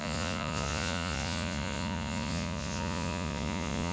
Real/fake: fake